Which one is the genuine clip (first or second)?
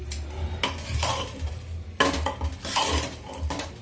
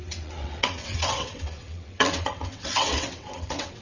first